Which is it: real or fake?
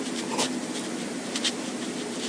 real